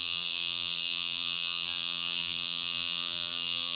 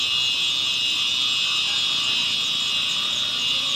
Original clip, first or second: second